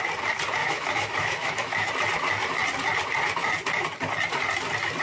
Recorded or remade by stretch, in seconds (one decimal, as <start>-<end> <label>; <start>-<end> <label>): 0.0-0.6 recorded; 0.6-1.9 remade; 1.9-5.0 recorded